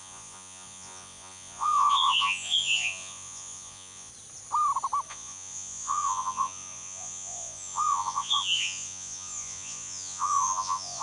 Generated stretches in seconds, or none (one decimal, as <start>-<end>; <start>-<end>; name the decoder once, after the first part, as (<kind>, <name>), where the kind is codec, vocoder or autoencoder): 0.0-4.1 (vocoder, Vocos); 5.1-11.0